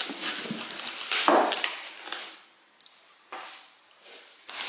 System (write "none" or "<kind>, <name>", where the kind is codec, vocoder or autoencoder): none